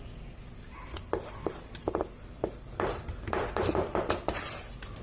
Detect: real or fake real